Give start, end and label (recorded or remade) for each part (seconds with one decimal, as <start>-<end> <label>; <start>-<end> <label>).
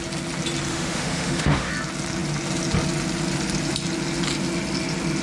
0.0-0.7 recorded; 0.7-1.7 remade; 1.7-5.2 recorded